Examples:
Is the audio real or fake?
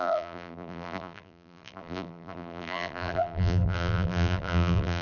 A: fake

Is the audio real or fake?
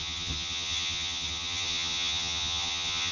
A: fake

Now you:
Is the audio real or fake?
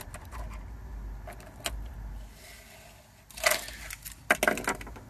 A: real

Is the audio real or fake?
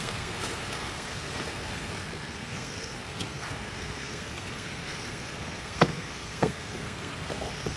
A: fake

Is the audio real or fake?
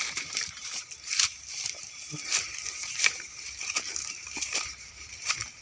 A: fake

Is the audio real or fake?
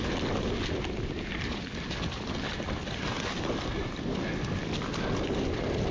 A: real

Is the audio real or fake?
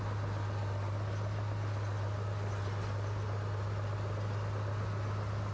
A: real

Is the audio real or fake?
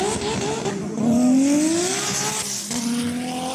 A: real